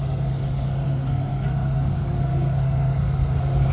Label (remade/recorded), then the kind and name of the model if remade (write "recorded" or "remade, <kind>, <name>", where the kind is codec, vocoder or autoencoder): remade, codec, SNAC